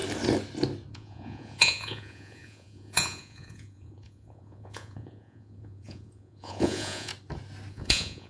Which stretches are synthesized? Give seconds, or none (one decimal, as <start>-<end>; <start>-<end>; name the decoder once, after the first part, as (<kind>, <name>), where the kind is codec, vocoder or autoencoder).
0.9-7.1 (vocoder, Vocos); 7.7-8.3